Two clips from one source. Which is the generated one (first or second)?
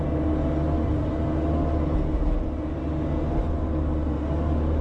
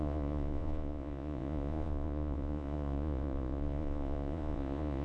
second